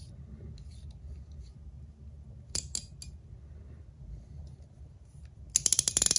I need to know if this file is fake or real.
real